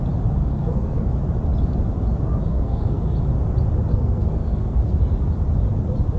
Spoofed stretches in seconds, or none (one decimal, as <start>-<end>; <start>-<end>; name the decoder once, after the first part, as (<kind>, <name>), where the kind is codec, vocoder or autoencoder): 0.4-1.1 (codec, SNAC); 2.5-3.0; 3.9-5.0